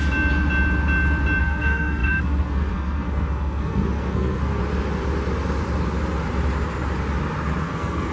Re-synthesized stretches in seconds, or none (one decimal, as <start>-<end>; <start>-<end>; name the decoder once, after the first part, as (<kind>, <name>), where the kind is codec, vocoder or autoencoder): 1.4-4.6 (codec, SNAC); 7.6-8.1